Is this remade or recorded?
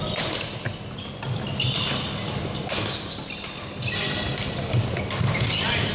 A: recorded